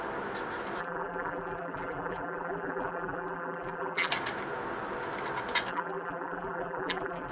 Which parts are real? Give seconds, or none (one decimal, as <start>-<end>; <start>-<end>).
0.0-0.8; 4.1-5.7